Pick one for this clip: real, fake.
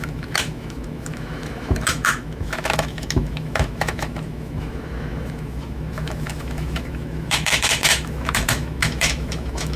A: fake